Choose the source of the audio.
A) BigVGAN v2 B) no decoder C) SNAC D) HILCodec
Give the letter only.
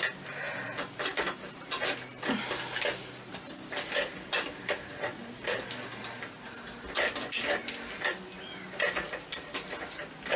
B